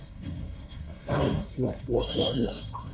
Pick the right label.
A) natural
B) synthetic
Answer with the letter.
B